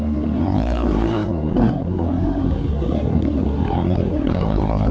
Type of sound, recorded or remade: remade